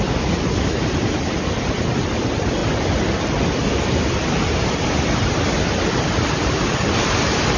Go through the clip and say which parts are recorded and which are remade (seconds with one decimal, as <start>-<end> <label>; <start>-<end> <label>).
0.0-7.6 recorded